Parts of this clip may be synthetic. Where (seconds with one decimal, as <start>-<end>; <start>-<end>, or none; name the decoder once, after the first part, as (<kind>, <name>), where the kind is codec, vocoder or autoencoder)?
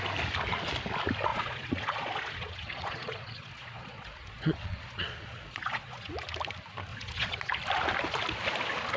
1.3-6.1 (vocoder, Vocos); 6.9-7.5